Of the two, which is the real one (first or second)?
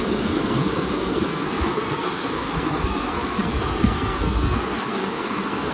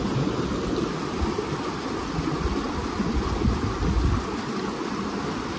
second